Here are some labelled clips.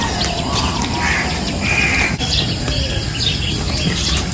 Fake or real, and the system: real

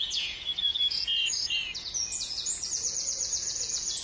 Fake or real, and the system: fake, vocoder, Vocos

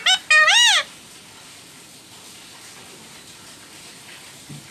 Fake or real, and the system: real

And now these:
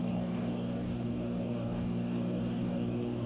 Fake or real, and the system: fake, codec, DAC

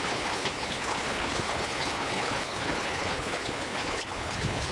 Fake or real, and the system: fake, codec, HILCodec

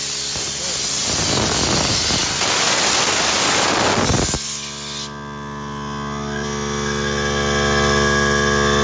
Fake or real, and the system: real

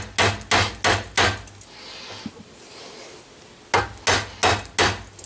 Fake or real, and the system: real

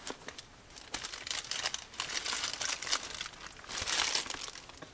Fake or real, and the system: real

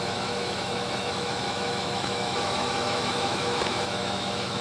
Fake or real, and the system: fake, autoencoder, DAC-VAE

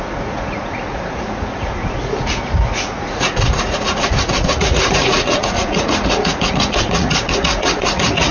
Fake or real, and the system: fake, vocoder, Vocos